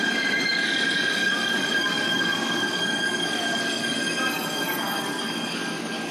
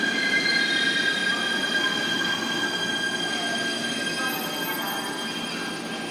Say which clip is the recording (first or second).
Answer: second